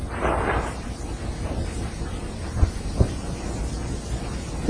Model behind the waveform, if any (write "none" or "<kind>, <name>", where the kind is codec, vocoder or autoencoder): none